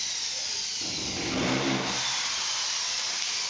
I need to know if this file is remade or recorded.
recorded